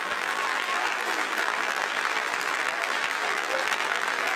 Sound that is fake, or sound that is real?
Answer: fake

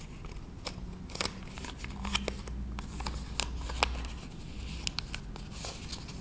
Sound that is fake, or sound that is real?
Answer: real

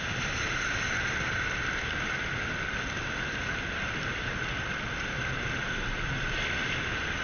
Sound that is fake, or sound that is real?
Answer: real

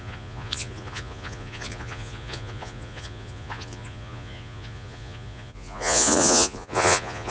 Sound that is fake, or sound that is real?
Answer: fake